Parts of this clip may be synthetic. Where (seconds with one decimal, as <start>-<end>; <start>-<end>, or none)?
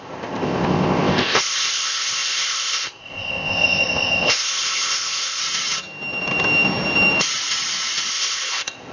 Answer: 0.0-5.4; 8.1-8.9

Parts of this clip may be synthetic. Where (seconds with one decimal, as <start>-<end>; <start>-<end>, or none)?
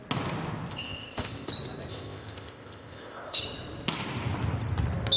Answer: 0.7-1.5; 1.9-3.4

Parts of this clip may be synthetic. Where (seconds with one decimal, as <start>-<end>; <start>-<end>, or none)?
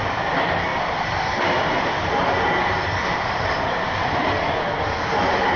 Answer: none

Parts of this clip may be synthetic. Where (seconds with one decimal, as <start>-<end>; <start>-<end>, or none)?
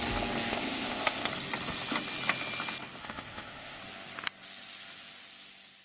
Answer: 0.5-1.3; 3.0-3.8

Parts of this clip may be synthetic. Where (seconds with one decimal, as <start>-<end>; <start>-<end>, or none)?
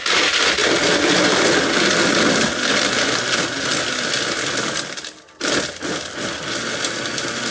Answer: none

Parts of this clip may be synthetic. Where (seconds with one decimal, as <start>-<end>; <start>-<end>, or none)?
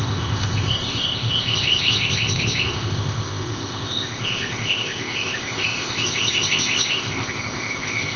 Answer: 0.0-8.2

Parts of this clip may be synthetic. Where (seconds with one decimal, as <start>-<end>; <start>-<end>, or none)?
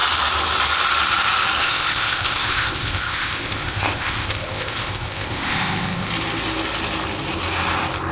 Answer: 1.6-6.1